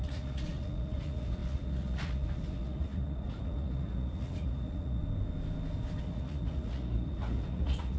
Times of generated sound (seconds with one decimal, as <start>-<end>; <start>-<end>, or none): 0.0-5.0; 6.0-8.0